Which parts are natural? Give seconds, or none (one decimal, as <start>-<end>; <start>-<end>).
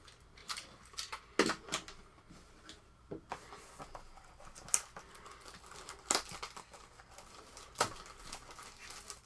0.0-6.6; 7.1-9.3